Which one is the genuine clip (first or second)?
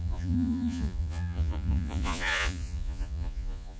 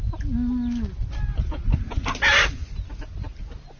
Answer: second